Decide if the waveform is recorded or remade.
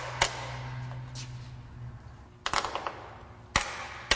recorded